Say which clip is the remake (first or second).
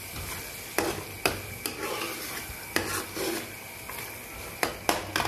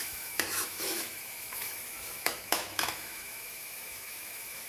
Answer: second